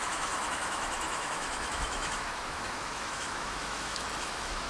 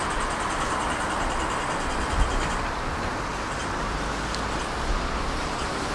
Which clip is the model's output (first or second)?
first